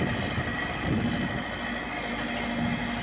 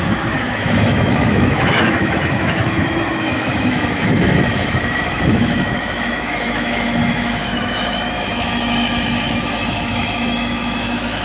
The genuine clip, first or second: first